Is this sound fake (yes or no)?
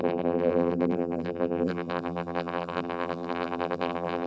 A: yes